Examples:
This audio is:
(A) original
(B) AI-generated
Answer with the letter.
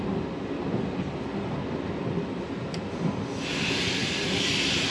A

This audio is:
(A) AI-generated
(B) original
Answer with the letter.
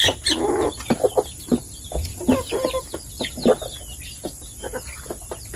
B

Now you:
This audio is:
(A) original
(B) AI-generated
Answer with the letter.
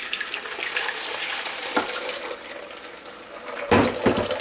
B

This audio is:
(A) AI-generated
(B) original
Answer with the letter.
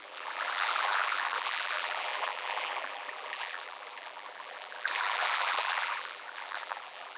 A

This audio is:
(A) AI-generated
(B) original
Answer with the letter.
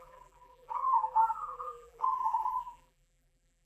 A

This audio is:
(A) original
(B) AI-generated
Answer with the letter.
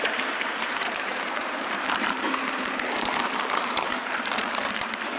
B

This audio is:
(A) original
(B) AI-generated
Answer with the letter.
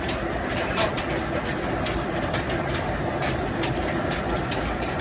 B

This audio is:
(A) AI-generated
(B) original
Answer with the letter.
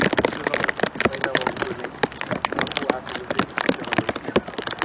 B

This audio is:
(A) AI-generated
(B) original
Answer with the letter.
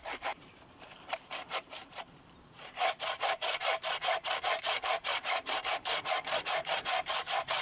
A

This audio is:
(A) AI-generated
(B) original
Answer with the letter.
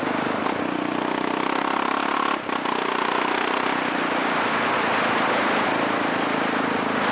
B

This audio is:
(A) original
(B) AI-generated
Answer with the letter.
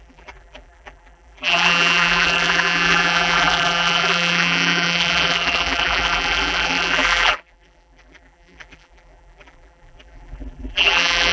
B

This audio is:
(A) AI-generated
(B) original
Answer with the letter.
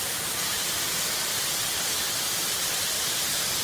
A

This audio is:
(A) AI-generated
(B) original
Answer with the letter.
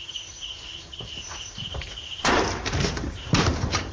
A